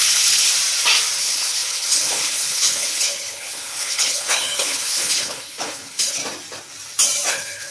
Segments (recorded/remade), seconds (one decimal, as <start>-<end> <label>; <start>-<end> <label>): 0.0-0.5 remade; 0.5-1.2 recorded; 1.2-6.2 remade; 6.2-7.3 recorded; 7.3-7.7 remade